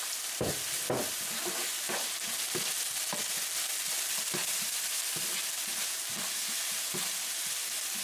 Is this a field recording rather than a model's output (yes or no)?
yes